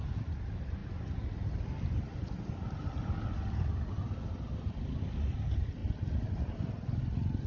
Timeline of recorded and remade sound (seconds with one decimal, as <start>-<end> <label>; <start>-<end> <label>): 0.0-5.8 recorded; 5.8-7.0 remade; 7.0-7.5 recorded

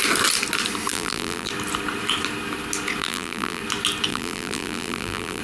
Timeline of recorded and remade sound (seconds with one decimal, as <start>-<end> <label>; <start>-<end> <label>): 0.0-0.9 recorded; 0.9-1.5 remade; 1.5-3.0 recorded; 3.0-3.6 remade; 3.6-4.1 recorded; 4.1-5.4 remade

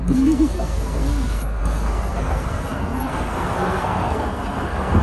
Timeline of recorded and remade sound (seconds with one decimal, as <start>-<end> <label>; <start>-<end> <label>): 0.0-5.0 remade

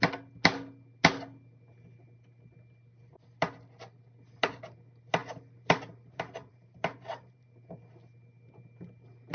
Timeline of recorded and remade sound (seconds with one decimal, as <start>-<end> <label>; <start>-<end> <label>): 0.0-5.2 recorded; 5.2-7.8 remade; 7.8-9.3 recorded

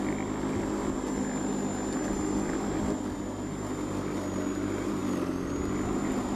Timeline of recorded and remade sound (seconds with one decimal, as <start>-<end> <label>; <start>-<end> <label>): 0.0-6.4 recorded

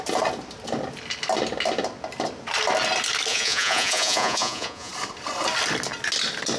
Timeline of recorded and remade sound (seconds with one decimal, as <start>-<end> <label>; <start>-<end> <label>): 0.0-3.3 recorded; 3.3-4.9 remade; 4.9-6.6 recorded